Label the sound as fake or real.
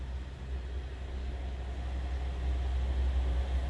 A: real